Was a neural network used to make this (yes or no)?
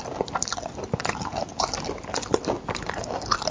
no